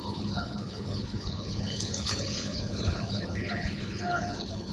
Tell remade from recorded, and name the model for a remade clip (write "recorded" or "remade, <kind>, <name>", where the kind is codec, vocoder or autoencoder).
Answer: remade, codec, HILCodec